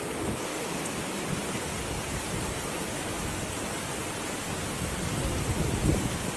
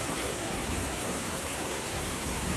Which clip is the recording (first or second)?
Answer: first